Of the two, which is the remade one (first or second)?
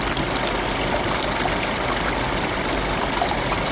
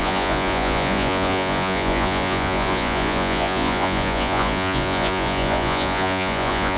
second